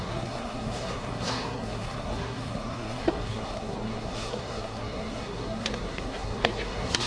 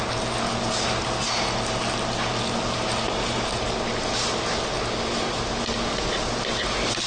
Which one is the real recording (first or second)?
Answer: second